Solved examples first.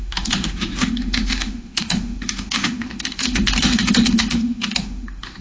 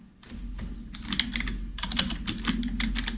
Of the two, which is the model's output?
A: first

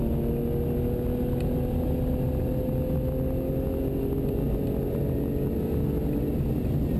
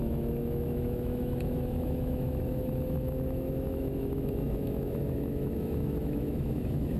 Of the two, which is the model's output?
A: second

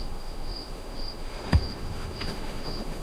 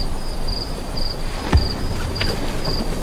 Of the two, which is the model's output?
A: first